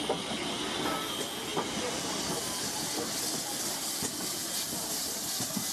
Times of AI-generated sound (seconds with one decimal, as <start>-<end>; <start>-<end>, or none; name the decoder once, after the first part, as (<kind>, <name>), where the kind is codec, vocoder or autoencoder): none